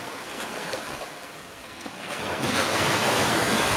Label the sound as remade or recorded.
remade